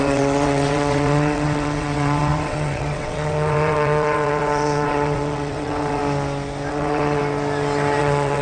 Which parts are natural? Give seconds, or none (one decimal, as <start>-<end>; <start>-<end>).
6.0-6.7; 7.2-8.0